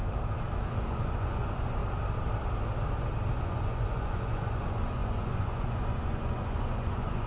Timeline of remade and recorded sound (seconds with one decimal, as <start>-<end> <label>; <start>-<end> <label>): 0.0-0.7 recorded; 0.7-1.8 remade; 1.8-3.3 recorded; 3.3-7.3 remade